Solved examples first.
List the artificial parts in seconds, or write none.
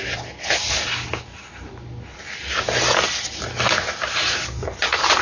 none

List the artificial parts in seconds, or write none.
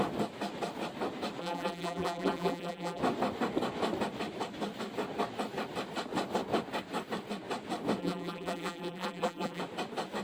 1.4-3.0 (vocoder, BigVGAN v2); 8.0-9.6